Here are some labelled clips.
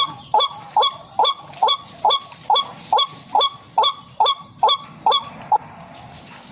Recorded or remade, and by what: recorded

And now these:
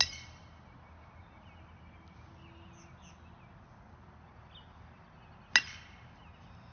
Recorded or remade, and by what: recorded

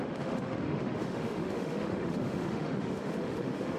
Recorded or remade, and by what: remade, autoencoder, DAC-VAE